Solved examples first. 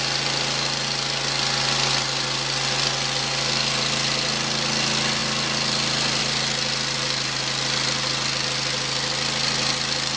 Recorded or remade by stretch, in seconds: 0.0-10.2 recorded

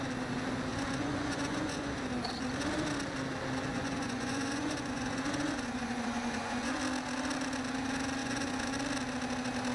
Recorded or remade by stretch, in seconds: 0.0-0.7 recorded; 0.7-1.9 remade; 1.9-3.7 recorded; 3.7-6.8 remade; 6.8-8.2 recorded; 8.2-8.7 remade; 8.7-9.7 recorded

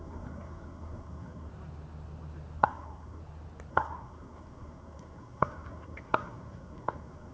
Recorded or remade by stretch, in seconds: 0.0-1.5 remade; 1.5-2.6 recorded; 2.6-3.2 remade; 3.2-3.7 recorded; 3.7-7.3 remade

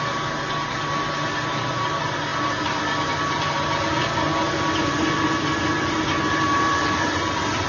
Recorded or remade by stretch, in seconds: 0.0-7.7 recorded

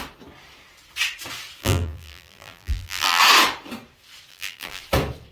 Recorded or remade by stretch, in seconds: 0.0-1.6 recorded; 1.6-3.2 remade; 3.2-4.3 recorded; 4.3-4.8 remade; 4.8-5.3 recorded